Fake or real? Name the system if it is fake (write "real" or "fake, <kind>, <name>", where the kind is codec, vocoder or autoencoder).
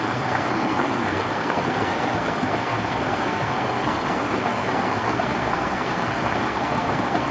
fake, codec, SNAC